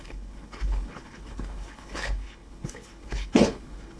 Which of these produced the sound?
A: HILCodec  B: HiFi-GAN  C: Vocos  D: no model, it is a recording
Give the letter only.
A